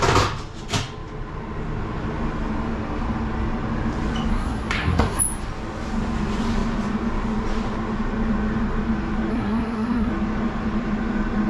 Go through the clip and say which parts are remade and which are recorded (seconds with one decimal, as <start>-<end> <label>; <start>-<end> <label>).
0.0-4.3 recorded; 4.3-5.2 remade; 5.2-9.3 recorded; 9.3-10.1 remade; 10.1-11.5 recorded